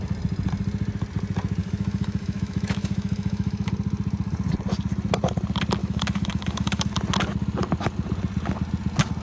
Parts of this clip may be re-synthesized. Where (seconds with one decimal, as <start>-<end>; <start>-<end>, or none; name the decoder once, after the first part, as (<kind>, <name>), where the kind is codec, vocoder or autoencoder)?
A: 1.6-3.7 (autoencoder, DAC-VAE); 5.8-6.9